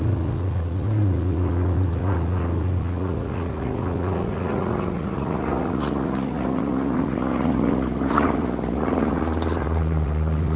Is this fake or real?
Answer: fake